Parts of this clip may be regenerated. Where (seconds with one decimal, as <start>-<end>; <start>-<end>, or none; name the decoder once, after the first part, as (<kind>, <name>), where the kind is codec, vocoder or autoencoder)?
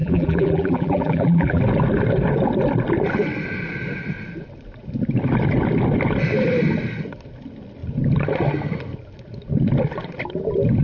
0.0-1.6 (vocoder, BigVGAN v2)